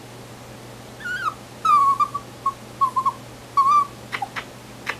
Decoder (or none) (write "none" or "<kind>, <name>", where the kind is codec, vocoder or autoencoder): none